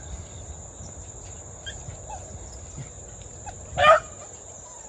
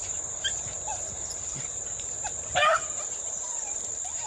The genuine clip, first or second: first